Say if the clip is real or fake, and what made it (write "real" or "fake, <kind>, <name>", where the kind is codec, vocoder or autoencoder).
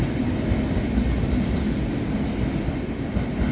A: real